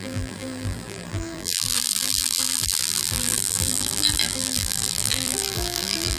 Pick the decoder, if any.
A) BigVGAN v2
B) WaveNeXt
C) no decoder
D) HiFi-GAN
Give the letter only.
A